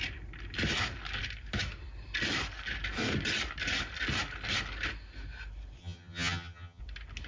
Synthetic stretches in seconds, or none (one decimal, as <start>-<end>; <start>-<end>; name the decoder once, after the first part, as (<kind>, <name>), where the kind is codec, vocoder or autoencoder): 5.8-6.8 (vocoder, HiFi-GAN)